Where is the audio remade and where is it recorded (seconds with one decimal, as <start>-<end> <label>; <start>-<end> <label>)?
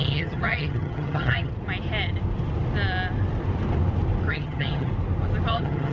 0.0-1.5 remade; 1.5-4.3 recorded; 4.3-4.9 remade; 4.9-5.5 recorded; 5.5-5.9 remade